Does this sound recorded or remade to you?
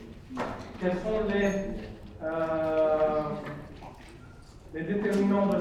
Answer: recorded